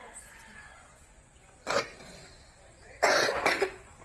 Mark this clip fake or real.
fake